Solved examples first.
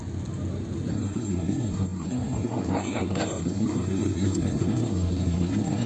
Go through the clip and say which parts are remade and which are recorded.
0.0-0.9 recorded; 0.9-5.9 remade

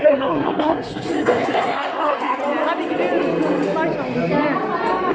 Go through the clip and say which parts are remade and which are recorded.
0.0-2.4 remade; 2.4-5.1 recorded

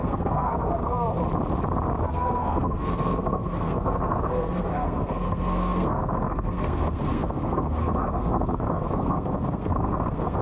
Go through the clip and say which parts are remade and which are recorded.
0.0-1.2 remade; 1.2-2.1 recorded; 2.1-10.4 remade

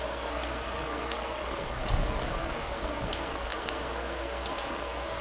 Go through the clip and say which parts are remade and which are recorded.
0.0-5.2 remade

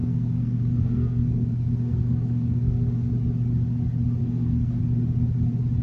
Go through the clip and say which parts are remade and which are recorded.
0.0-3.1 remade; 3.1-4.2 recorded; 4.2-4.8 remade; 4.8-5.8 recorded

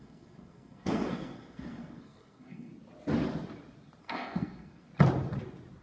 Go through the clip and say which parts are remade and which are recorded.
0.0-2.7 remade; 2.7-4.0 recorded; 4.0-4.9 remade; 4.9-5.8 recorded